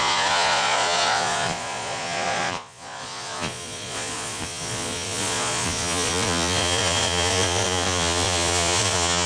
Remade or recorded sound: remade